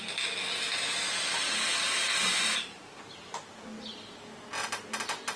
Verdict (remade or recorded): recorded